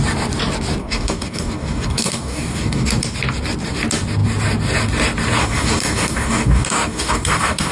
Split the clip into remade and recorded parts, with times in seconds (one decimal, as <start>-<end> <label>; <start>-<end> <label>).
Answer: 0.0-0.8 recorded; 0.8-2.9 remade; 2.9-5.4 recorded; 5.4-7.7 remade